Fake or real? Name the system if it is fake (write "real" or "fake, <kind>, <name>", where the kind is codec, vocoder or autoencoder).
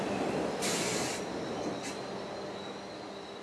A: real